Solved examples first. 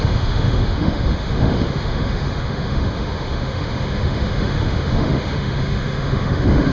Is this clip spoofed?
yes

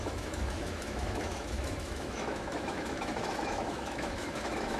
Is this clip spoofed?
yes